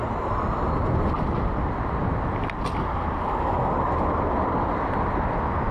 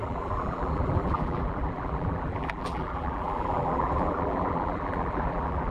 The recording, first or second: first